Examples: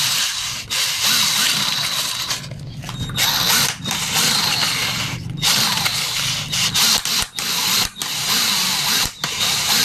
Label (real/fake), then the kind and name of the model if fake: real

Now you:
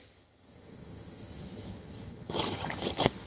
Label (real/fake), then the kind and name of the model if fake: fake, vocoder, HiFi-GAN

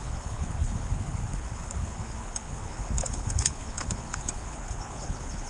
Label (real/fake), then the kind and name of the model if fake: fake, codec, HILCodec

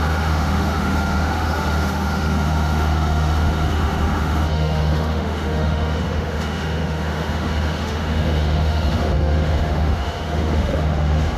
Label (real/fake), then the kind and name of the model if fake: fake, autoencoder, DAC-VAE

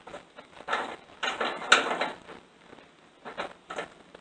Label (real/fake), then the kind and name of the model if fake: real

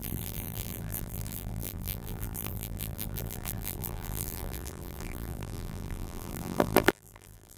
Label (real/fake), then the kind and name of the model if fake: fake, vocoder, BigVGAN v2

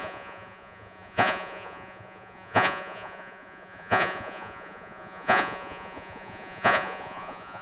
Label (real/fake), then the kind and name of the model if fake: fake, vocoder, Vocos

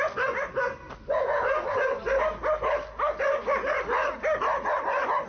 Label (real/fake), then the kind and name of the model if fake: real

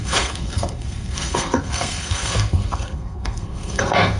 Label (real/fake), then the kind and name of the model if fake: fake, codec, SNAC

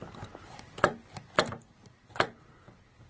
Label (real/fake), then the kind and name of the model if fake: real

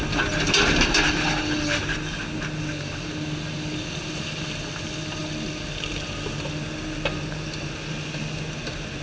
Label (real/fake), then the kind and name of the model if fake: real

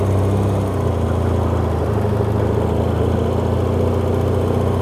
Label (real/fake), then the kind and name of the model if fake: real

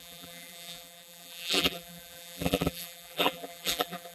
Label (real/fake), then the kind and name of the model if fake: fake, vocoder, BigVGAN v2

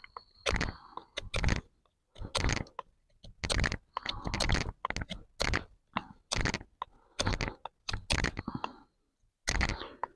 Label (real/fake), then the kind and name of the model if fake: real